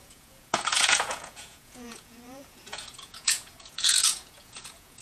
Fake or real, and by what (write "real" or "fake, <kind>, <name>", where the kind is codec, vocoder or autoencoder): fake, vocoder, Vocos